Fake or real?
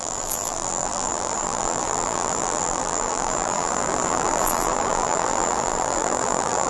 fake